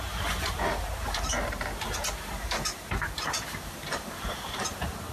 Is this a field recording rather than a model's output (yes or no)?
no